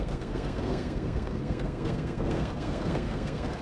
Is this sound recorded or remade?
remade